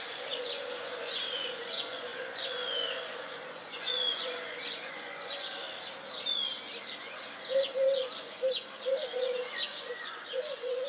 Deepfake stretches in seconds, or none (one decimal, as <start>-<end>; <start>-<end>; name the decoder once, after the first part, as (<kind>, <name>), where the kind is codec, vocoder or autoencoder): 0.0-5.5 (vocoder, Vocos); 7.0-10.9